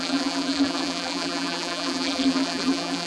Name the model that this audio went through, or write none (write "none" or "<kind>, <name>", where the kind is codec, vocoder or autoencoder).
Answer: vocoder, BigVGAN v2